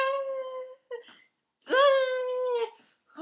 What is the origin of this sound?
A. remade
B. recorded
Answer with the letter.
B